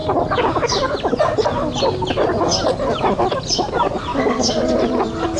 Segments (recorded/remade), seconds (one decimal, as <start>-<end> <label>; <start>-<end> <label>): 0.0-5.4 recorded